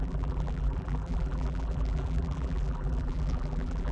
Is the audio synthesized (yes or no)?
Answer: yes